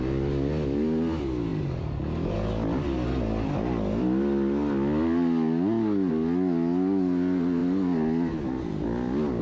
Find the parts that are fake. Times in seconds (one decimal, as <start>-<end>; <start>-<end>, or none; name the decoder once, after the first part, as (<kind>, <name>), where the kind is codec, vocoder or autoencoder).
none